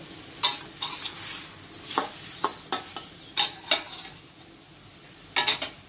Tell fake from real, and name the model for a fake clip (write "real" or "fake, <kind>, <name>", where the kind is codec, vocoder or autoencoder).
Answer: real